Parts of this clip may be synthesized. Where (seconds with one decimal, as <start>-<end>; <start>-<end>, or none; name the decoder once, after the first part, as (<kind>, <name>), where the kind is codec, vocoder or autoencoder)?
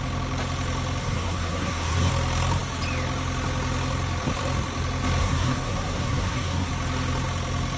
1.0-2.1 (codec, SNAC); 5.2-6.7